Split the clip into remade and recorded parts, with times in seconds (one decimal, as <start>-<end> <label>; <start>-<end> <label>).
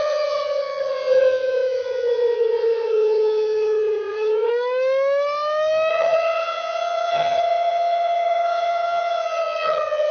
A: 0.0-4.5 remade; 4.5-5.9 recorded; 5.9-10.1 remade